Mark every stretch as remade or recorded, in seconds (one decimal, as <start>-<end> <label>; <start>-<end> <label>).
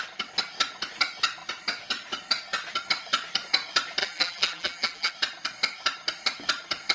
0.0-4.0 recorded; 4.0-5.1 remade; 5.1-6.9 recorded